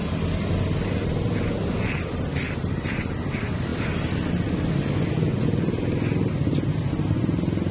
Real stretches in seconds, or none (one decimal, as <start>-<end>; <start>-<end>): 0.0-2.3; 3.1-7.7